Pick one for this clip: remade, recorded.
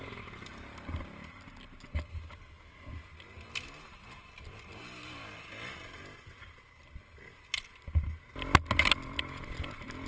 recorded